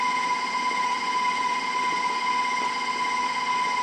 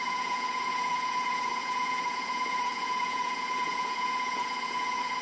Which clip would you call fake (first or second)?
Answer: second